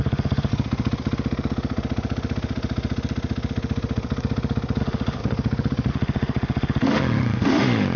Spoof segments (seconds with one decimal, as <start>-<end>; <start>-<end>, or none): 0.0-0.5; 4.8-5.2; 5.9-8.0